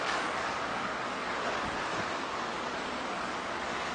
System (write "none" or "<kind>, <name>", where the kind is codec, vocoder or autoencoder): codec, DAC